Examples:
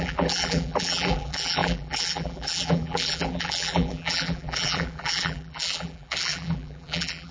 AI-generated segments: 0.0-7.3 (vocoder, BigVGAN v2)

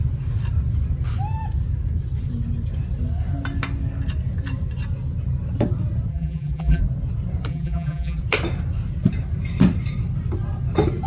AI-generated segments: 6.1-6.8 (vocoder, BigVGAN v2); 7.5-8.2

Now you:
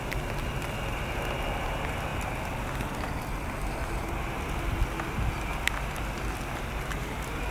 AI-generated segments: none

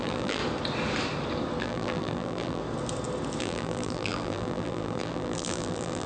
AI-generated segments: 0.0-0.4 (vocoder, BigVGAN v2); 1.6-2.6; 3.4-6.1